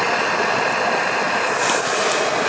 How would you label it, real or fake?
real